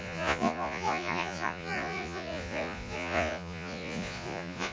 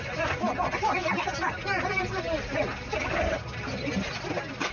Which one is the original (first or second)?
second